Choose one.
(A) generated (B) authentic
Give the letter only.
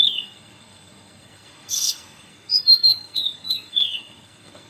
A